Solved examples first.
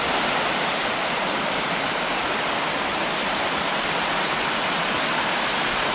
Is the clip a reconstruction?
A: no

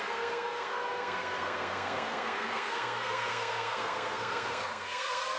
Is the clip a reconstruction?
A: yes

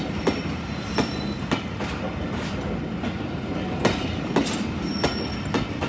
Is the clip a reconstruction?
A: no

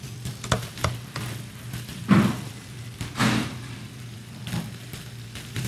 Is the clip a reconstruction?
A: yes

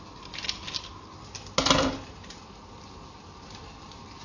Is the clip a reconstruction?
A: no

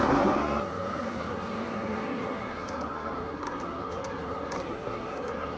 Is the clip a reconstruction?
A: yes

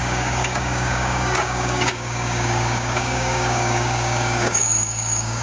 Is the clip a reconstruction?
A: yes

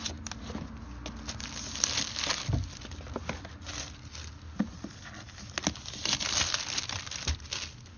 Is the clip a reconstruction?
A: no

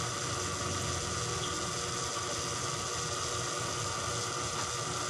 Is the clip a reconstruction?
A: no